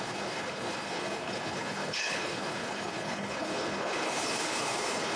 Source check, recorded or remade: remade